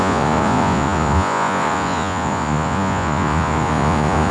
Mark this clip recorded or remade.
remade